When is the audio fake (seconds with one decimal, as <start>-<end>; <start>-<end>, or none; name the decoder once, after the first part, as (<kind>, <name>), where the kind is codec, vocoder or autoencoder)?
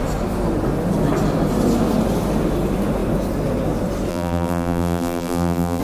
4.1-5.8 (vocoder, BigVGAN v2)